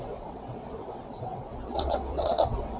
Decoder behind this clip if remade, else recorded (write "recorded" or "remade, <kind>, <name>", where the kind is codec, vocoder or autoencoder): remade, vocoder, WaveNeXt